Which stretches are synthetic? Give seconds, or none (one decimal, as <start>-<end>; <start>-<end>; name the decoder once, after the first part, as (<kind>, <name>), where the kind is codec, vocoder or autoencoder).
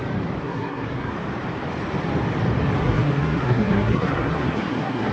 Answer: 0.4-1.1 (codec, SNAC); 2.8-5.1